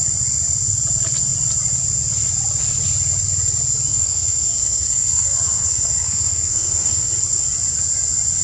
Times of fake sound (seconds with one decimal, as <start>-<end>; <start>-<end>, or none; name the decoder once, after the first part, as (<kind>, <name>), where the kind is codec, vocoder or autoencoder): 3.9-7.1 (codec, SNAC)